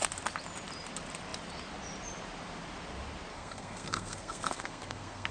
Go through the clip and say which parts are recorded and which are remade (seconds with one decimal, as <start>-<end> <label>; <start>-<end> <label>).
0.0-3.3 recorded; 3.3-5.3 remade